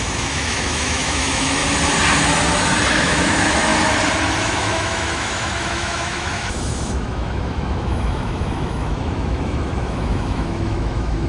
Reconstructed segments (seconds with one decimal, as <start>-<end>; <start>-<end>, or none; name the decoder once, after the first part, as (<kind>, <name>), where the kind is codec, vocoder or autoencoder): 0.0-1.6 (autoencoder, DAC-VAE); 3.0-3.7; 4.4-11.3